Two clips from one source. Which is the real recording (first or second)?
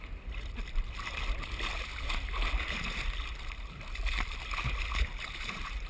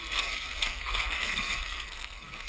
first